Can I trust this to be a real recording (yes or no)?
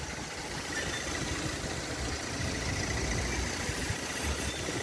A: yes